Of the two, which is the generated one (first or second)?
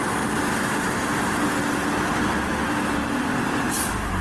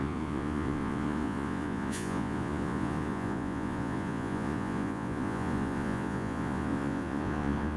second